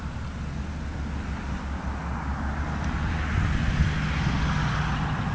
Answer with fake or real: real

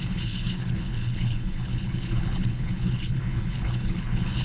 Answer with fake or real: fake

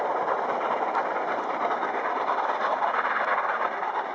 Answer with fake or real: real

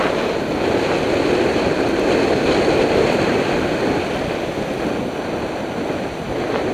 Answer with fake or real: real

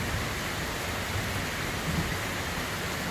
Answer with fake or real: real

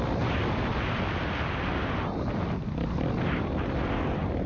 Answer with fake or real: real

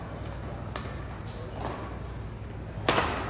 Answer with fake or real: real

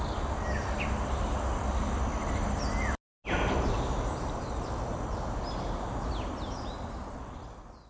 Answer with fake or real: real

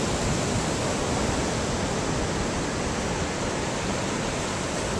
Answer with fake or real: real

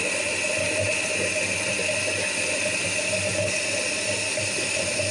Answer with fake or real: real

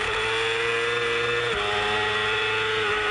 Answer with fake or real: real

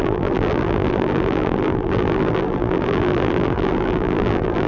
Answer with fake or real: fake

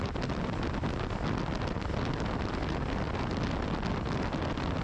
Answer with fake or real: real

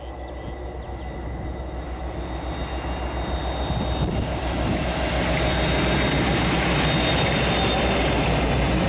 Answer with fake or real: real